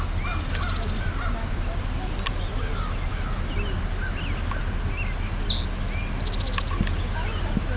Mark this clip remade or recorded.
recorded